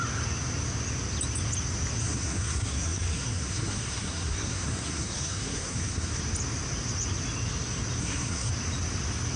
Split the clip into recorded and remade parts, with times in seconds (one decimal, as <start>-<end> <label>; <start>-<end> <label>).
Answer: 0.0-2.0 recorded; 2.0-6.2 remade; 6.2-8.0 recorded; 8.0-8.5 remade; 8.5-9.4 recorded